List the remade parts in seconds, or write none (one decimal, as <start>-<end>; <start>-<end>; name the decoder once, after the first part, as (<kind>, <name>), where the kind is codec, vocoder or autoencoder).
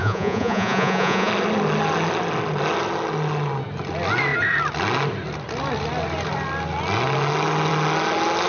0.0-1.3 (vocoder, Vocos)